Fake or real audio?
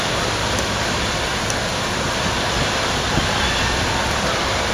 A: real